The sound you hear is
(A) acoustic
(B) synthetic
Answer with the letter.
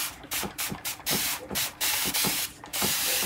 B